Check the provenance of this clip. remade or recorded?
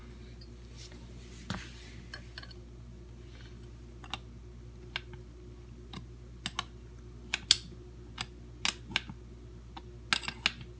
recorded